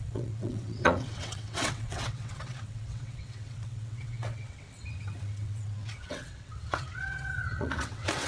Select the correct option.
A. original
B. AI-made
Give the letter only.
B